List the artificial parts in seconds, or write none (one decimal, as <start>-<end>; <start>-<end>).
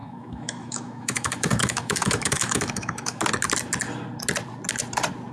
0.0-3.2